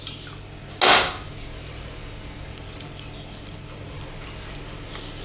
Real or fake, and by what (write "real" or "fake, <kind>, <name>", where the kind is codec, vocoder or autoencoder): real